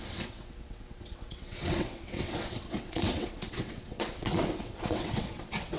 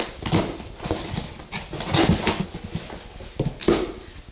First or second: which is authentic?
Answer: second